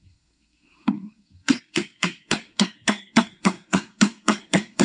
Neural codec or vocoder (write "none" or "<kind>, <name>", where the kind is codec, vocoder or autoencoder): codec, SNAC